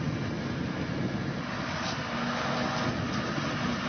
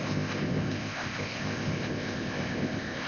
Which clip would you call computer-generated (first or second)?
second